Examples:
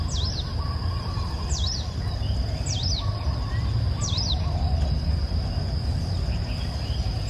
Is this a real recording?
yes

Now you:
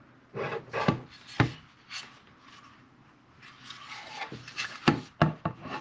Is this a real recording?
yes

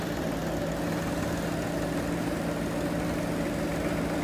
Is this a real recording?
yes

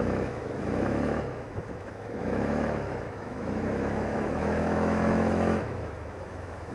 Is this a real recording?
no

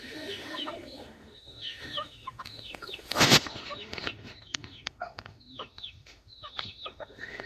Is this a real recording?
no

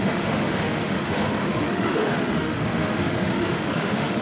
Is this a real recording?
no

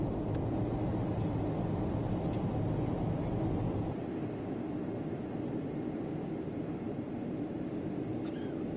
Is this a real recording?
yes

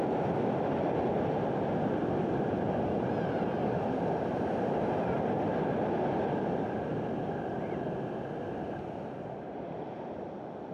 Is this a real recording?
yes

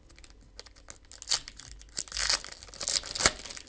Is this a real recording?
yes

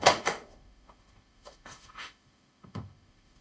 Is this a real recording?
no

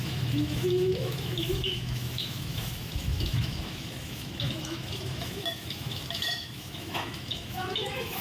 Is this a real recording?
no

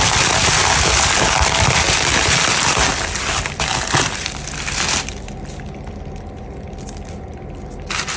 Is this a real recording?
yes